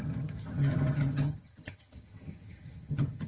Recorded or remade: remade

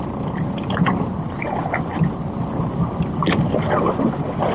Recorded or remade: recorded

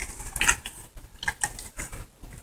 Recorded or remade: recorded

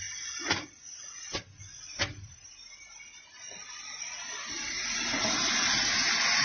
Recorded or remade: recorded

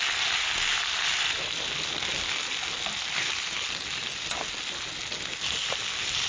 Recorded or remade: recorded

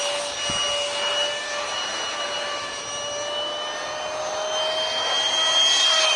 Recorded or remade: recorded